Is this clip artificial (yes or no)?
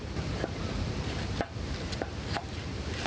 yes